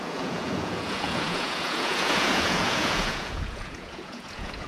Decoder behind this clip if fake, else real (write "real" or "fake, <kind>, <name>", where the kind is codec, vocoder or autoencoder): fake, vocoder, Vocos